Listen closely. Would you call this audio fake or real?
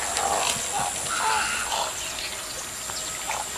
real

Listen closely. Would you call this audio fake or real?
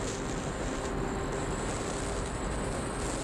real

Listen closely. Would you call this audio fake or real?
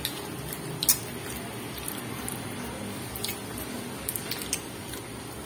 real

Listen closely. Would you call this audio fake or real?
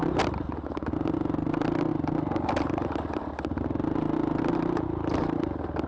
real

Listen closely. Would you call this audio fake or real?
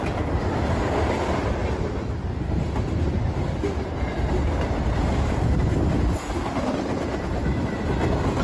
real